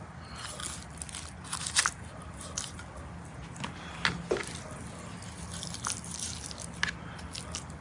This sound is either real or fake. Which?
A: real